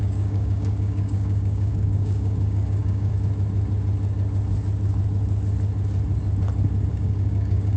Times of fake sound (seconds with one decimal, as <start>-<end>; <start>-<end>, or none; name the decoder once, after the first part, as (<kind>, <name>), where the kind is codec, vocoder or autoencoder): 0.0-3.1 (codec, DAC); 6.9-7.8